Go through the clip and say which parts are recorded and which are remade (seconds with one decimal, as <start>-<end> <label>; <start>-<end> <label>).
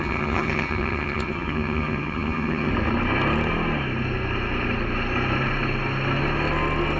0.0-2.7 remade; 2.7-7.0 recorded